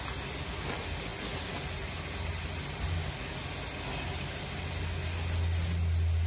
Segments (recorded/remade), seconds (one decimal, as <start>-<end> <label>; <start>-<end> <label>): 0.0-6.3 recorded